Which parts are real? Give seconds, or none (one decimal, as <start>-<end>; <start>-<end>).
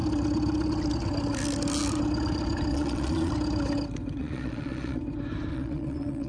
0.0-2.7; 3.3-4.2; 5.0-5.5